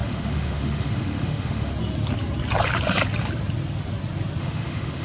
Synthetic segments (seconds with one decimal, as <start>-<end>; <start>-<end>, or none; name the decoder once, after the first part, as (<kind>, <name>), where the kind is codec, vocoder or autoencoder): 0.0-1.7 (autoencoder, DAC-VAE); 4.4-5.0